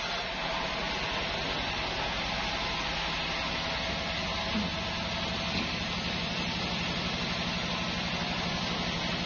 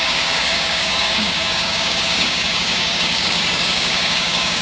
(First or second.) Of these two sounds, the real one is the first